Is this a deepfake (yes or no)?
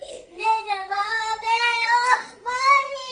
yes